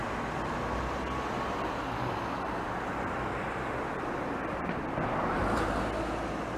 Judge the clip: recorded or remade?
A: recorded